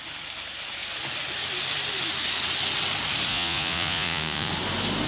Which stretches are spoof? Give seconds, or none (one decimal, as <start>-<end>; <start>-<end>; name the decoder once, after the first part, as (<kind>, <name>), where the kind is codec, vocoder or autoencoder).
3.3-4.5 (vocoder, Vocos)